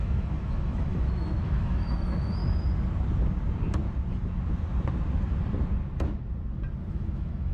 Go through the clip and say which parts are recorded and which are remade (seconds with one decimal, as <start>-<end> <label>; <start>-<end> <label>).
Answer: 0.0-2.4 remade; 2.4-6.9 recorded; 6.9-7.5 remade